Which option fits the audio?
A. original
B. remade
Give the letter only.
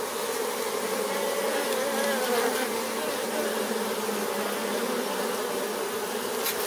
A